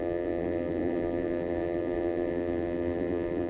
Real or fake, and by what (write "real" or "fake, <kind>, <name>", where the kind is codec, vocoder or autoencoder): fake, vocoder, BigVGAN v2